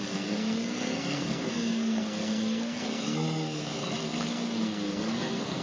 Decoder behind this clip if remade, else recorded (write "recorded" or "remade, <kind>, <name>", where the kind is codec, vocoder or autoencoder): remade, codec, SNAC